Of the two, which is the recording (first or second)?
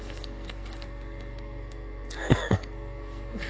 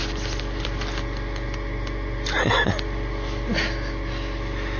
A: second